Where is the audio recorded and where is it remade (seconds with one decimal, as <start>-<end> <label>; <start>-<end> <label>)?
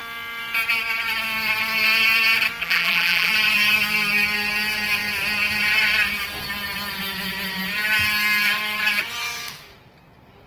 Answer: 0.0-2.6 recorded; 2.6-3.3 remade; 3.3-10.5 recorded